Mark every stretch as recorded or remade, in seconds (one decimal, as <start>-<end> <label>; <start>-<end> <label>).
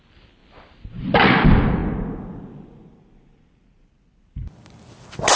0.0-0.4 remade; 0.4-1.1 recorded; 1.1-1.8 remade; 1.8-4.2 recorded; 4.2-5.4 remade